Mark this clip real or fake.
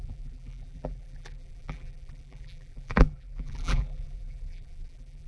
fake